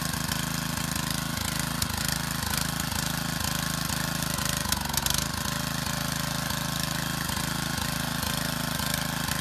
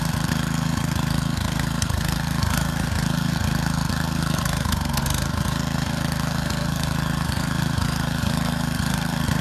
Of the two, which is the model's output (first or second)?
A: second